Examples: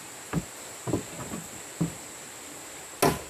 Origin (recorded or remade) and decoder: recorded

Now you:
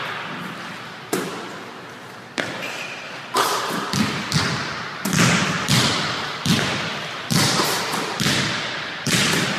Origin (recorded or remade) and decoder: recorded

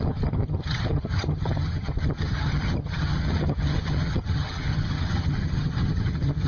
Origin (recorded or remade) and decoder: remade, vocoder, HiFi-GAN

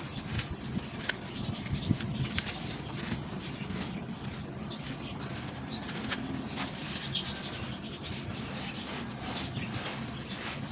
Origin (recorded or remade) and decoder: recorded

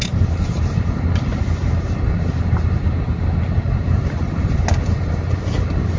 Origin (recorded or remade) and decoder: recorded